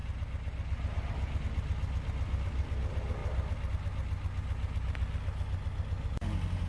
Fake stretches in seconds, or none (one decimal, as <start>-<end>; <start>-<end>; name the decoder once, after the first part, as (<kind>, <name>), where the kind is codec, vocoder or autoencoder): 0.0-1.4 (vocoder, BigVGAN v2)